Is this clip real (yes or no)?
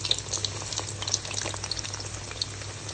yes